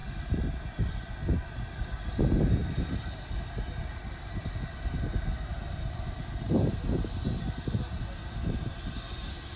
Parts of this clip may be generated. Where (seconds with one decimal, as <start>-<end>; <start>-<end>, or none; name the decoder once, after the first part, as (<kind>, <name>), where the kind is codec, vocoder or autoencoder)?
none